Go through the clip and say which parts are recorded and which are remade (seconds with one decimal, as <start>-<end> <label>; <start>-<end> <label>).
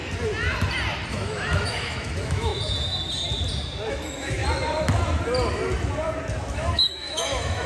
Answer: 0.0-1.1 recorded; 1.1-2.5 remade; 2.5-3.9 recorded; 3.9-4.4 remade; 4.4-6.5 recorded; 6.5-7.7 remade